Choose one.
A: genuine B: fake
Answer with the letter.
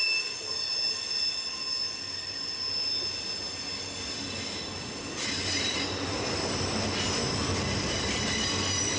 A